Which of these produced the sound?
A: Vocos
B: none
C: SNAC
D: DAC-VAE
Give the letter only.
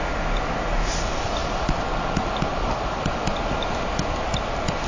B